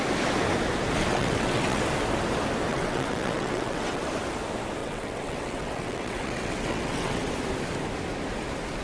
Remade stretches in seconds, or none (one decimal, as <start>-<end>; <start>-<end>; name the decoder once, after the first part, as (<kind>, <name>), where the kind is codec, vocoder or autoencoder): 1.1-1.8 (vocoder, WaveNeXt); 2.7-4.1; 4.8-7.3